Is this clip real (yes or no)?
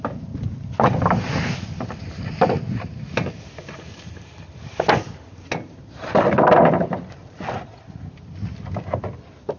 yes